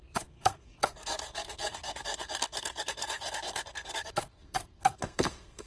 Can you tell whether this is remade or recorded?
remade